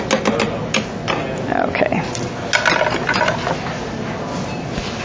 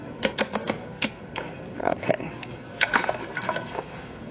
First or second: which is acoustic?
first